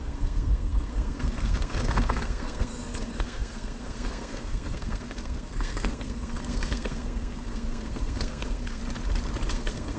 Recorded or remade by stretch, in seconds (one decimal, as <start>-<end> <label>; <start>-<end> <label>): 0.0-8.8 remade; 8.8-9.5 recorded; 9.5-10.0 remade